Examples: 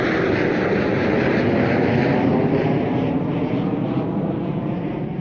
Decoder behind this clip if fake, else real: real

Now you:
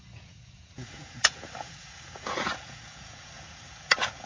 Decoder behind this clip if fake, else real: fake, vocoder, Vocos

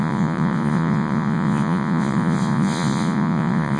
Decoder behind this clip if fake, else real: fake, vocoder, Vocos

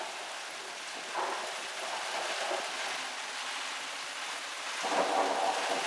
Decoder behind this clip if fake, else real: real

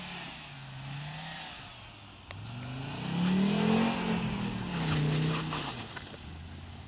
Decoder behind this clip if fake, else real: real